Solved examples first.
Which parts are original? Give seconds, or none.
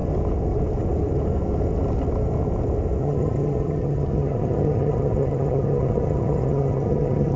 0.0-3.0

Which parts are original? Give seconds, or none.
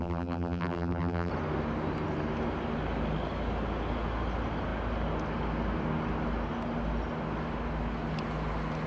1.3-8.9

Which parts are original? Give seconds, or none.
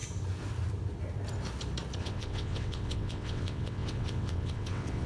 0.0-2.0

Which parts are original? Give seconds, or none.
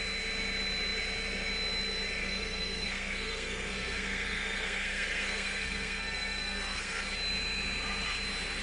0.0-2.2; 7.0-8.6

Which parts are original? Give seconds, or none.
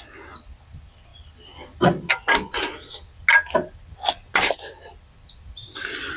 0.0-6.2